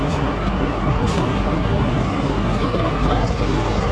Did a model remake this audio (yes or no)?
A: yes